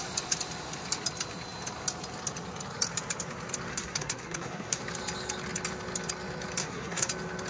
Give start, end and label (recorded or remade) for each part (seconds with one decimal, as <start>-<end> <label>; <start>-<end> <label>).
0.0-3.7 recorded; 3.7-4.8 remade; 4.8-6.6 recorded; 6.6-7.1 remade; 7.1-7.5 recorded